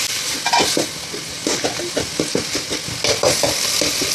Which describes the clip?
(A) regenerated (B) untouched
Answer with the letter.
B